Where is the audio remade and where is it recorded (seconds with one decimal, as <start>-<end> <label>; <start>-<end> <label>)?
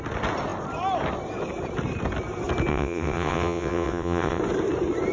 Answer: 0.0-2.7 recorded; 2.7-4.4 remade; 4.4-5.1 recorded